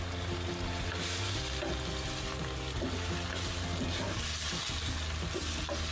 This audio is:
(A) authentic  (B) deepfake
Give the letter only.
A